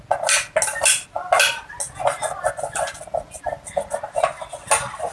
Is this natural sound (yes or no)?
yes